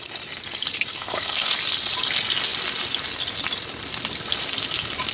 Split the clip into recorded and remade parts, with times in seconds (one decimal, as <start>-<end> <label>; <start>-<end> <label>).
0.0-0.9 recorded; 0.9-1.5 remade; 1.5-5.1 recorded